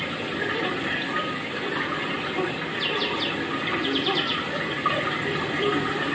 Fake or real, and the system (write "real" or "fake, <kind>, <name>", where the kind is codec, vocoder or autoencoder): real